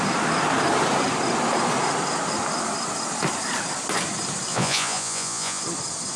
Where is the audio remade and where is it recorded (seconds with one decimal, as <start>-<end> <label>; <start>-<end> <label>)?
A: 0.0-4.5 recorded; 4.5-5.6 remade; 5.6-6.2 recorded